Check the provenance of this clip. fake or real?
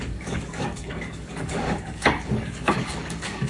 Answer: fake